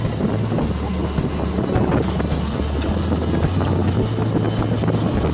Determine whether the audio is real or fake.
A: real